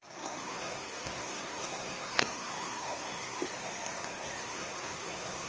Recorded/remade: remade